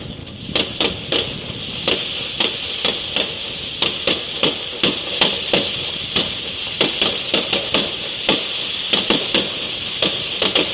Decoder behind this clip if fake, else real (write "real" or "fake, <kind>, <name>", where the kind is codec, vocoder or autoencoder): real